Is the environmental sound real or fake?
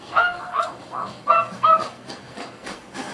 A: fake